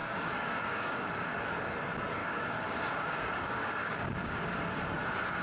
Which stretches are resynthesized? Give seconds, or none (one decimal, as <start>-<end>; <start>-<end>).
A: 0.0-1.1; 2.2-4.8